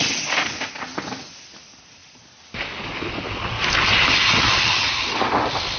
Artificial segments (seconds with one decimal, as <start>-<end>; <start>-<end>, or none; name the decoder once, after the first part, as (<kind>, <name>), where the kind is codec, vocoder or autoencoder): none